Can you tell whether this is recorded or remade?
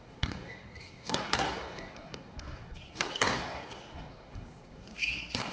remade